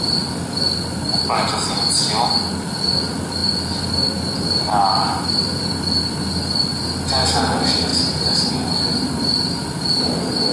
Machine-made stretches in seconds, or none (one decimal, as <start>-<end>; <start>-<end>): none